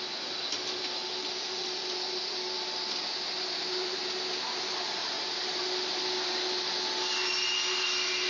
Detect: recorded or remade recorded